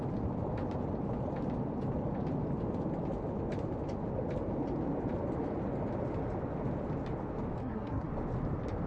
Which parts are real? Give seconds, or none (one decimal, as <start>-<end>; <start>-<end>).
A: 0.0-7.6; 8.1-8.9